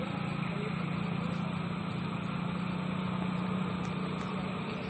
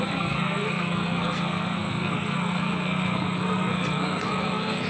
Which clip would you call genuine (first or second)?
first